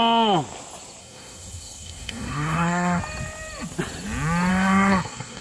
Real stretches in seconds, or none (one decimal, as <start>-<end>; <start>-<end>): 0.0-1.0; 3.0-4.5